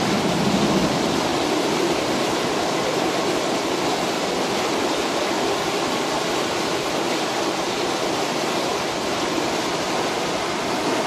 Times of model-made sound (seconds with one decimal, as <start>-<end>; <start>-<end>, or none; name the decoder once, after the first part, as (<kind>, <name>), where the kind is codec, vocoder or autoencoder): none